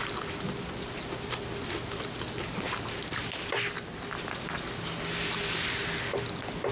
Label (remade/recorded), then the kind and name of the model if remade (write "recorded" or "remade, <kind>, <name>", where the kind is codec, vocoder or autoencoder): recorded